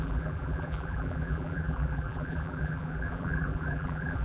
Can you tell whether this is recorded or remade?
remade